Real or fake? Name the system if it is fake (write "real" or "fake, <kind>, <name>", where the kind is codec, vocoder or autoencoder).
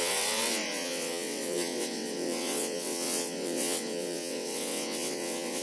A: fake, vocoder, WaveNeXt